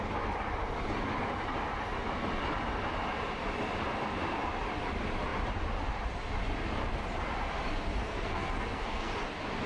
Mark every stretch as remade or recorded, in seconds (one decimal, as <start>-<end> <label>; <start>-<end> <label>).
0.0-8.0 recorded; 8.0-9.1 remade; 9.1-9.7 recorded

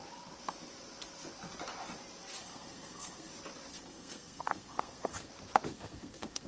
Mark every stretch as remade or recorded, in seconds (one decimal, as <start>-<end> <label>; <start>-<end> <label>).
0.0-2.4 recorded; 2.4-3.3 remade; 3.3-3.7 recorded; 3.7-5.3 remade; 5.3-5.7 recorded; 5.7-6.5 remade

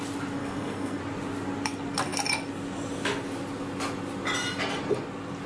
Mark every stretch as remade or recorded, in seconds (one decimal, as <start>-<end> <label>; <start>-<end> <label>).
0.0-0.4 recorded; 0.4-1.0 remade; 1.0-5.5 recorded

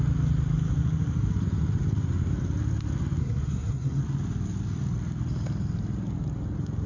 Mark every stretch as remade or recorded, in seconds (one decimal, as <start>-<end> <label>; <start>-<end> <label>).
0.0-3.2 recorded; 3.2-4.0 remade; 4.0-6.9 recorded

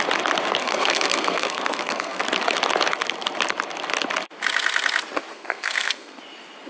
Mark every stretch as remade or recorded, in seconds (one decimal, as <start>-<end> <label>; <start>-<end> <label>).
0.0-0.6 recorded; 0.6-2.2 remade; 2.2-5.3 recorded; 5.3-6.2 remade; 6.2-6.7 recorded

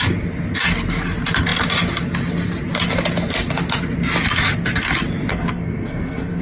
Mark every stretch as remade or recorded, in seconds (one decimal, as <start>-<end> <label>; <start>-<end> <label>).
0.0-5.3 recorded; 5.3-6.4 remade

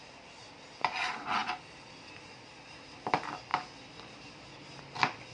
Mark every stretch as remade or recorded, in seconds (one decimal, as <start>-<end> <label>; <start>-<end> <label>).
0.0-5.3 recorded

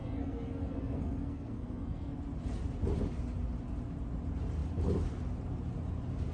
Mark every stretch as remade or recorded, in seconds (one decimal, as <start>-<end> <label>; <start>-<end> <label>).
0.0-2.2 remade; 2.2-6.3 recorded